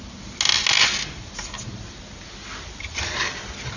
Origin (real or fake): real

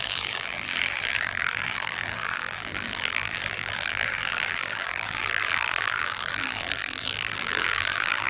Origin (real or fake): fake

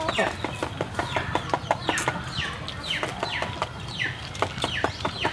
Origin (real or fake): real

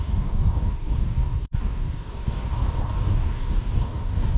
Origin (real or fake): fake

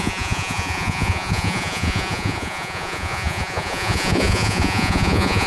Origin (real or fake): fake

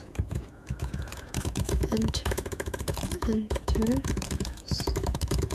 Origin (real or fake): fake